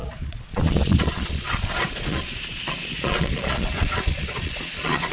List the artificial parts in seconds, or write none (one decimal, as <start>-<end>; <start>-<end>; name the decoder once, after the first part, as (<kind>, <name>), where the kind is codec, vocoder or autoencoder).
0.0-5.1 (vocoder, Vocos)